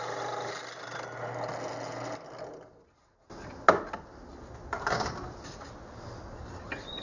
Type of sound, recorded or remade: recorded